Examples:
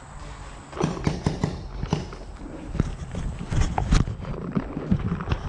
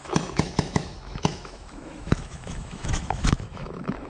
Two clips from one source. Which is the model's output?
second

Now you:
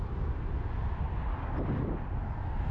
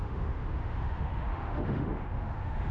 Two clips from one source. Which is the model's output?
second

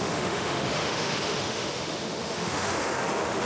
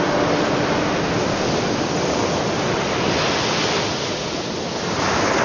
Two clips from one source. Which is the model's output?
first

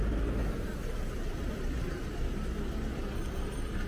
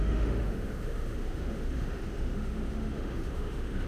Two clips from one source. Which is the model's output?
second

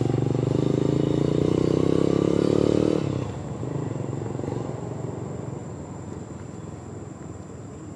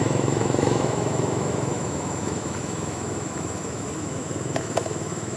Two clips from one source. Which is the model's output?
second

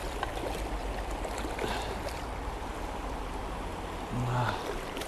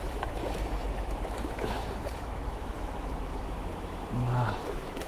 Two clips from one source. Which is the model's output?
second